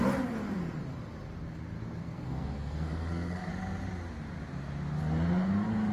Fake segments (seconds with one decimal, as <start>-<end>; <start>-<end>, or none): 2.0-3.5